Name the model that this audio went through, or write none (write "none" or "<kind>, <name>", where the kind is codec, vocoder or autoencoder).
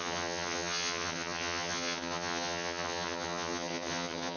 vocoder, HiFi-GAN